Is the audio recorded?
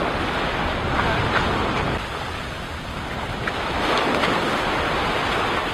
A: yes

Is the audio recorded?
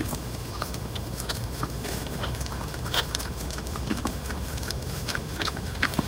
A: no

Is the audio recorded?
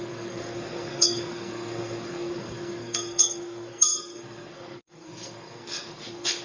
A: no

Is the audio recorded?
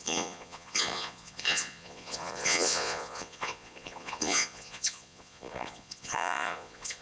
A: no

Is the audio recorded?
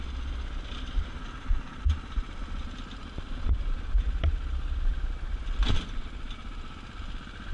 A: yes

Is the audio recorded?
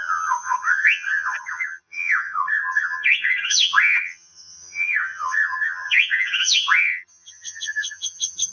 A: no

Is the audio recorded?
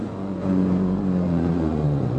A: no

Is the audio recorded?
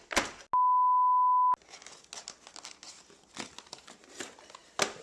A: yes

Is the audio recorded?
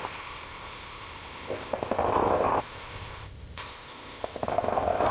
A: no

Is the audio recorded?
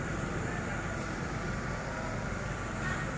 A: no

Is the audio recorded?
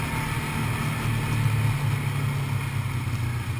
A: yes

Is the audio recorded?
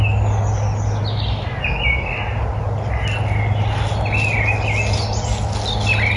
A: yes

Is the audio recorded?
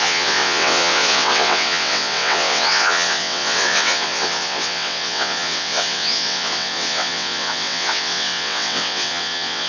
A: no